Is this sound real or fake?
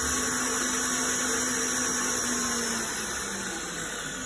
real